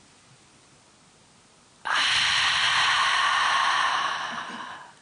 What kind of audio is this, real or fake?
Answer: real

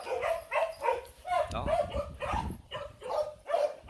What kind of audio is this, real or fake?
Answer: fake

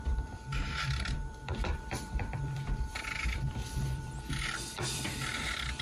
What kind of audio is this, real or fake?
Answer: fake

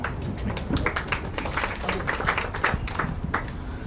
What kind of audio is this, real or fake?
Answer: real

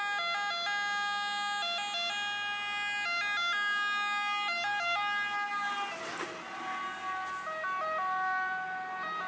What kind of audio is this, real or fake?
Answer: real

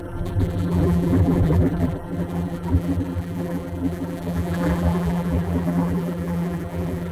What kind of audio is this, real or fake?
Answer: fake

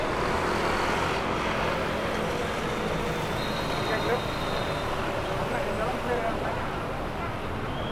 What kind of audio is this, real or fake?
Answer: real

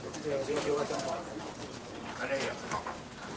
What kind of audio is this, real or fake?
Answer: fake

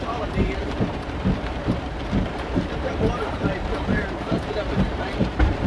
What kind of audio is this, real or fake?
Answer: fake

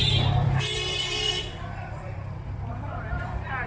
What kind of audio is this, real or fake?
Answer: fake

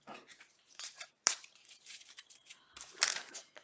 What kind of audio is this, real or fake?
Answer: fake